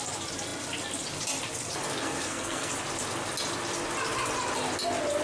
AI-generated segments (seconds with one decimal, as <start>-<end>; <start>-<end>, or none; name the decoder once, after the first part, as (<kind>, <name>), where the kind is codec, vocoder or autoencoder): 2.0-2.7 (codec, SNAC)